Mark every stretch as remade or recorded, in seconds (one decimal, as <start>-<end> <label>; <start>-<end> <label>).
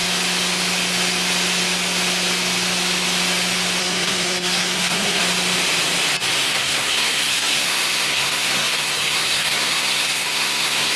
0.0-3.8 recorded; 3.8-5.2 remade; 5.2-6.5 recorded; 6.5-11.0 remade